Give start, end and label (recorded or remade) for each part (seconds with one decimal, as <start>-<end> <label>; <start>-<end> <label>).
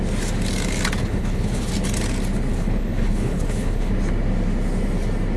0.0-1.0 recorded; 1.0-1.7 remade; 1.7-2.5 recorded; 2.5-3.9 remade; 3.9-5.4 recorded